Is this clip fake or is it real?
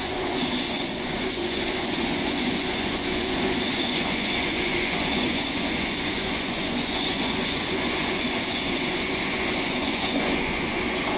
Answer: fake